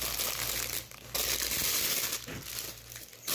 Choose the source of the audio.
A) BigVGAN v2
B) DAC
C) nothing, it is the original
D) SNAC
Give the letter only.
C